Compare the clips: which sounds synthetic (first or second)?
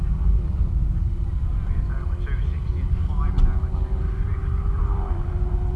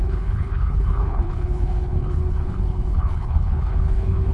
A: second